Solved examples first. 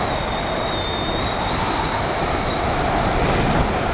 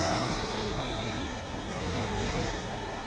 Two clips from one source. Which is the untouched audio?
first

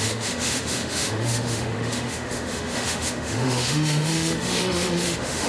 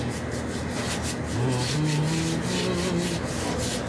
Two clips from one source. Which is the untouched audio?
second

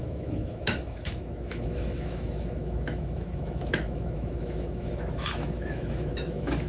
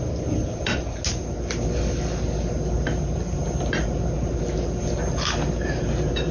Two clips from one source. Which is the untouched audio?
second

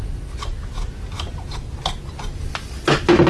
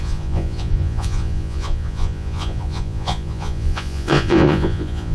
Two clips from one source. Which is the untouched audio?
first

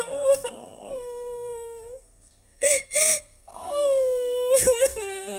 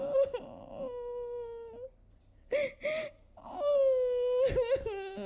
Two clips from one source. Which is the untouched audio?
second